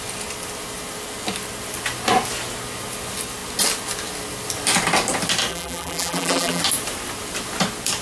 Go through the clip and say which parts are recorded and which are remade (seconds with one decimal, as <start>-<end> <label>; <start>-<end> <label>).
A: 0.0-5.5 recorded; 5.5-6.6 remade; 6.6-8.0 recorded